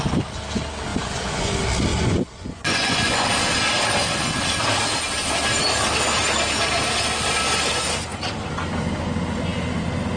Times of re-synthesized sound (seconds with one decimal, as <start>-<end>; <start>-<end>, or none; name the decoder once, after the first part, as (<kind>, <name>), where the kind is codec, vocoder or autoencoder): 0.9-1.5 (vocoder, Vocos); 1.9-3.3